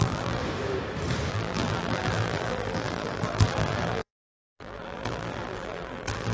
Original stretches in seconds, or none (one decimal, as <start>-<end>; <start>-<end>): 0.4-1.3